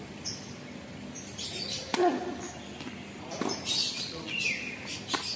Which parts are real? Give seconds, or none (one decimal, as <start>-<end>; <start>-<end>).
0.0-3.8; 4.3-5.4